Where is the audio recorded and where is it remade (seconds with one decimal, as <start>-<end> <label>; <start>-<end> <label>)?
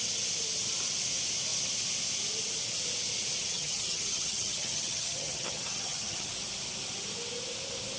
0.0-3.4 recorded; 3.4-6.3 remade; 6.3-8.0 recorded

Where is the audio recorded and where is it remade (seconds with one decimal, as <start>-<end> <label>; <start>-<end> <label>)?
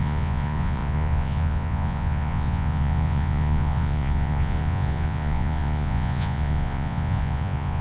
0.0-7.8 remade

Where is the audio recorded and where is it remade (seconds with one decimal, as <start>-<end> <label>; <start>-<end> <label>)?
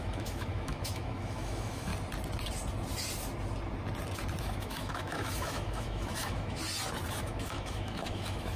0.0-1.9 remade; 1.9-4.4 recorded; 4.4-6.6 remade; 6.6-7.1 recorded; 7.1-8.6 remade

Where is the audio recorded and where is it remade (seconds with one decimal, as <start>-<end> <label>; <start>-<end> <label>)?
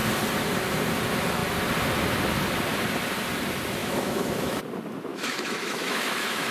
0.0-3.8 recorded; 3.8-4.6 remade; 4.6-5.1 recorded; 5.1-6.5 remade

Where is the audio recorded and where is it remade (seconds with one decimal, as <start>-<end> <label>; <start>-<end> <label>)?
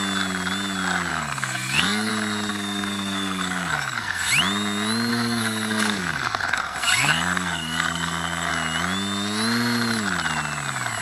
0.0-1.1 recorded; 1.1-2.1 remade; 2.1-2.5 recorded; 2.5-4.3 remade; 4.3-5.1 recorded; 5.1-8.5 remade; 8.5-11.0 recorded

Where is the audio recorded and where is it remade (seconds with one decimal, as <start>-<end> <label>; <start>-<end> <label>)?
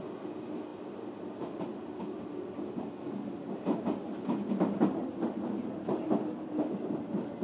0.0-7.4 recorded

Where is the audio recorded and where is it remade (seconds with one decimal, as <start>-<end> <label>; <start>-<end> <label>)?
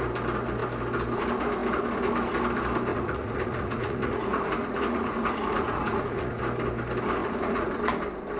0.0-2.9 recorded; 2.9-6.4 remade; 6.4-7.2 recorded; 7.2-7.7 remade; 7.7-8.4 recorded